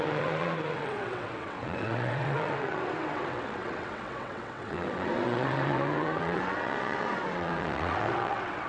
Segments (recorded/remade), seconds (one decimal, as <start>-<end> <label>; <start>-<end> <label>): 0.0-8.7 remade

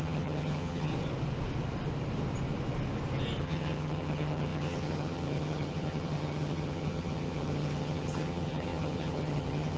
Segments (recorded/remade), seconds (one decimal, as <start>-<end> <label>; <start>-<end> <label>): 0.0-0.9 remade; 0.9-3.4 recorded; 3.4-9.8 remade

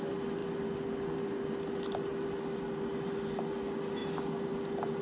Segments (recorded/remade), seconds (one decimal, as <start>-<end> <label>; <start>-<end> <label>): 0.0-5.0 recorded